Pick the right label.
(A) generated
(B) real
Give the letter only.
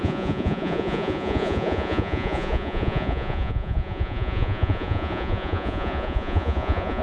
A